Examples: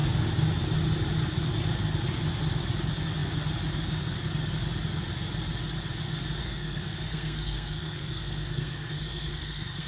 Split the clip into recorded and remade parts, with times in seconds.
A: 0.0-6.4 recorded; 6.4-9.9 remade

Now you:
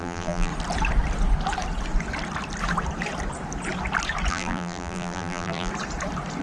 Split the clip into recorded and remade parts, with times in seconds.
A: 0.0-0.5 remade; 0.5-4.3 recorded; 4.3-5.7 remade; 5.7-6.4 recorded

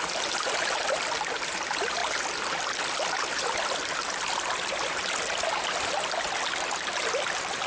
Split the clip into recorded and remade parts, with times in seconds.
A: 0.0-7.7 recorded

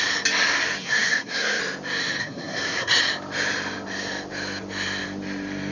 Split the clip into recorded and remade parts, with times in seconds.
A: 0.0-0.8 recorded; 0.8-1.6 remade; 1.6-2.2 recorded; 2.2-3.0 remade; 3.0-5.7 recorded

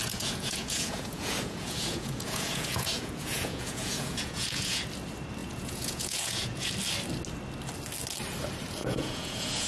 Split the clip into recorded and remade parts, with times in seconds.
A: 0.0-4.8 remade; 4.8-5.4 recorded; 5.4-6.7 remade; 6.7-8.8 recorded; 8.8-9.7 remade

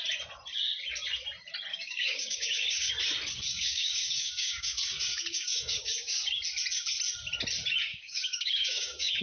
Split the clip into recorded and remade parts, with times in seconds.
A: 0.0-1.7 recorded; 1.7-2.9 remade; 2.9-3.5 recorded; 3.5-6.4 remade; 6.4-7.9 recorded; 7.9-9.2 remade

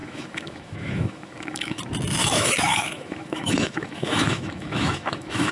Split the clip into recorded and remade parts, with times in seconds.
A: 0.0-1.8 remade; 1.8-2.2 recorded; 2.2-5.5 remade